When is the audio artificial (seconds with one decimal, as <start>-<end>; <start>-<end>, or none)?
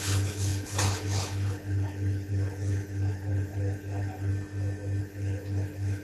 0.0-4.3; 5.0-6.0